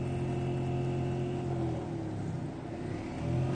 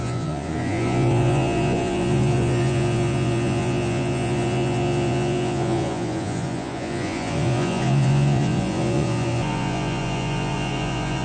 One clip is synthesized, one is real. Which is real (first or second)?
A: first